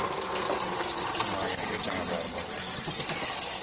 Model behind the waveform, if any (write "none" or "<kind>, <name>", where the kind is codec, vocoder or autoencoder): none